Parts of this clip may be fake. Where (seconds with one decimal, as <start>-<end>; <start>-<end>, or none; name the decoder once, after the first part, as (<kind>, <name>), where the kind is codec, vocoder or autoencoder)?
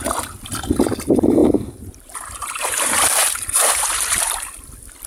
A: 1.4-4.5 (vocoder, BigVGAN v2)